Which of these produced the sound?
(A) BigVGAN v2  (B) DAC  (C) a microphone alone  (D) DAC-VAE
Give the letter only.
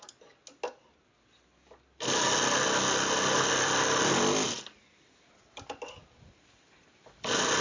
C